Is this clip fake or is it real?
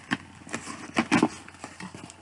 real